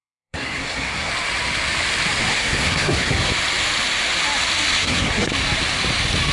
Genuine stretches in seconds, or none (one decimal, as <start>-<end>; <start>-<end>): 1.1-2.3; 3.3-4.8; 5.3-6.3